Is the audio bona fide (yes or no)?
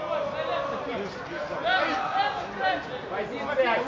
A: yes